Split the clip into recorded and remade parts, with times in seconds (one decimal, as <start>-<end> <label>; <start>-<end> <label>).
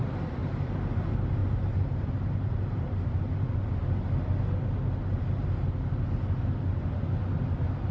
0.0-1.4 recorded; 1.4-3.7 remade; 3.7-7.9 recorded